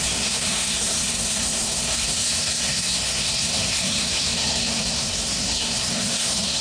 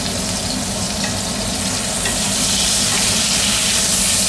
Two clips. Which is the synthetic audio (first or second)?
first